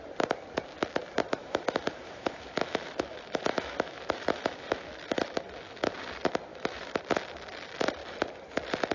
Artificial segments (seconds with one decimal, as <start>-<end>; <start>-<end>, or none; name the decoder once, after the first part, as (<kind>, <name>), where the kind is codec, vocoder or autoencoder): 1.4-5.9 (autoencoder, DAC-VAE); 6.5-7.0